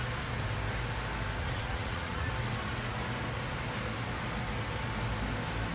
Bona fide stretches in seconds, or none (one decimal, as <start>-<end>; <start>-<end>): 0.0-1.4; 2.3-5.7